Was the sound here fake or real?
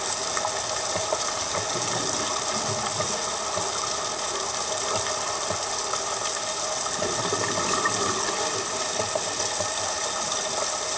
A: real